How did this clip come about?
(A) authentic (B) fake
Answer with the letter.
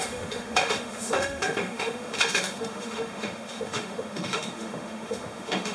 B